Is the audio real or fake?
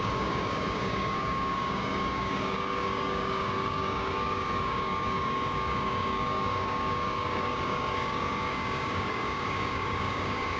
fake